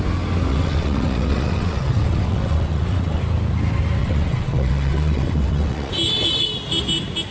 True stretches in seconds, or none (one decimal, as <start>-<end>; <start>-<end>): 0.0-0.5; 3.2-4.0; 5.9-7.3